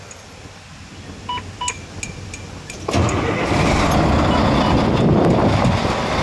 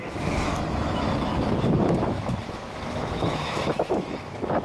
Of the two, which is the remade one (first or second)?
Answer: second